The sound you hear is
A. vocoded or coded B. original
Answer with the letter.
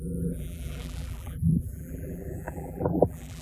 A